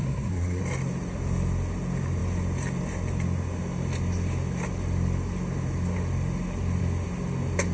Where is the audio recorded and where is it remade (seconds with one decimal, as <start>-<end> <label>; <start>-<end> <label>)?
0.0-0.6 remade; 0.6-7.7 recorded